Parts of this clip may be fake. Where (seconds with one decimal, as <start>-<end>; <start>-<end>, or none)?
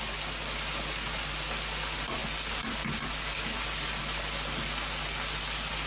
none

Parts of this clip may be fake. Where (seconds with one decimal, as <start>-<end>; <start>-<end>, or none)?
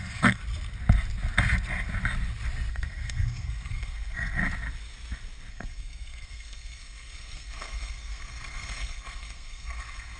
0.0-0.4; 2.7-4.4; 5.5-10.2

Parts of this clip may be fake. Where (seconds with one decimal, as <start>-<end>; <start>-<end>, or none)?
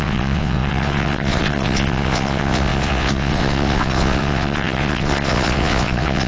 0.0-6.3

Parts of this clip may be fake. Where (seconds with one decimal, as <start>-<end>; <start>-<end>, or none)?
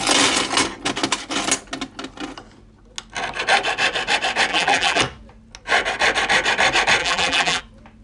4.5-5.0; 7.0-7.6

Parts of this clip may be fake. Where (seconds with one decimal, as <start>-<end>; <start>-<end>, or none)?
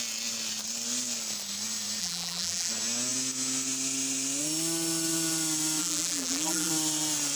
2.0-2.7; 5.8-6.7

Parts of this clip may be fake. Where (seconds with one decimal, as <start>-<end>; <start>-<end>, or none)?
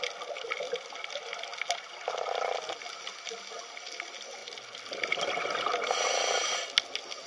none